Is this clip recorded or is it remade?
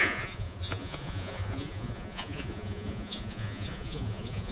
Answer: remade